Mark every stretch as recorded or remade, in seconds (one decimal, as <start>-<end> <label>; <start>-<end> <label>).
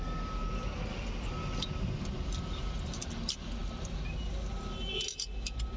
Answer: 0.0-5.8 recorded